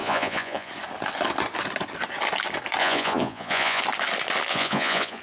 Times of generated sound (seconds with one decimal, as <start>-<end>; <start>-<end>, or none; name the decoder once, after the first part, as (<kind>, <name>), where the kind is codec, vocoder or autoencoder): 0.0-0.7 (vocoder, Vocos); 2.8-3.8; 4.5-5.2